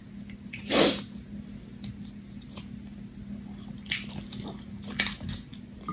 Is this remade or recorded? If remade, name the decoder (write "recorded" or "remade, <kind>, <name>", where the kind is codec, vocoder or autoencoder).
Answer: recorded